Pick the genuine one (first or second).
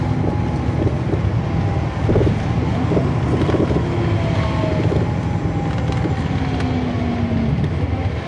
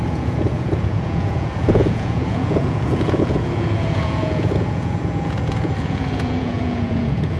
first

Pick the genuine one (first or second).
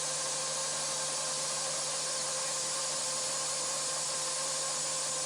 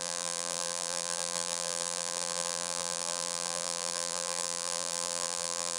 first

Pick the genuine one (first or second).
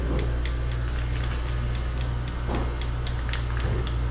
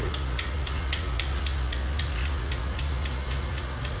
first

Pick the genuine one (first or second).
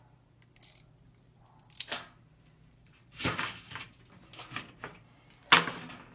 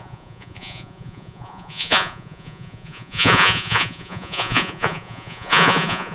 first